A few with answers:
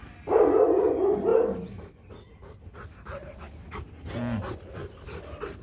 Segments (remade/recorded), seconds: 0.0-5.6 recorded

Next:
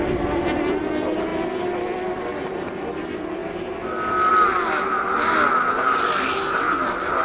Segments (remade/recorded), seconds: 0.0-7.2 recorded

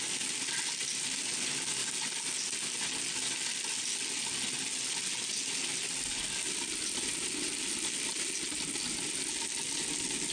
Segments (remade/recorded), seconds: 0.0-10.3 recorded

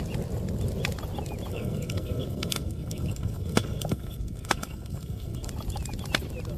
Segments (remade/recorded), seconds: 0.0-1.5 recorded; 1.5-5.5 remade; 5.5-6.6 recorded